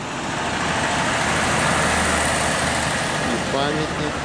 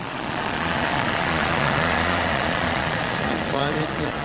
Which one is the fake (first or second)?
second